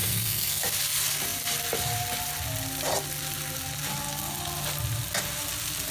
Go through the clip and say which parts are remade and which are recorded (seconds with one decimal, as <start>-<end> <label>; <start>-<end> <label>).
0.0-0.6 remade; 0.6-5.9 recorded